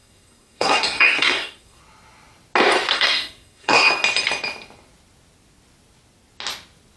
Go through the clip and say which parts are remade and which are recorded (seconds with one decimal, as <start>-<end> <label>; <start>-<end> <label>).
0.0-1.8 remade; 1.8-2.9 recorded; 2.9-3.9 remade; 3.9-7.0 recorded